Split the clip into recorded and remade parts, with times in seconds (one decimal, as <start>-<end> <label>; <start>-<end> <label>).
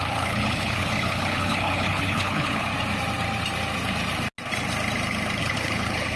0.0-2.7 remade; 2.7-5.4 recorded; 5.4-6.2 remade